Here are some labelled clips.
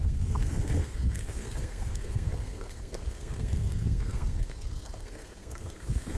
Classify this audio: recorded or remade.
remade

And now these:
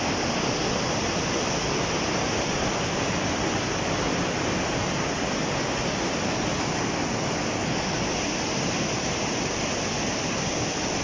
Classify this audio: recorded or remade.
recorded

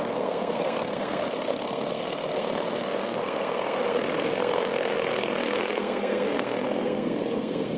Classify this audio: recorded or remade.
remade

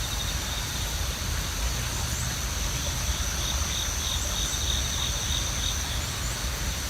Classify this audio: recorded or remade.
recorded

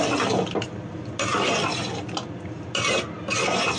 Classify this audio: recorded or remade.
recorded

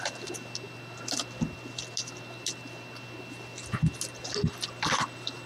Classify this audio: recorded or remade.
recorded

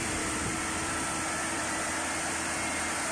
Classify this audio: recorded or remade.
remade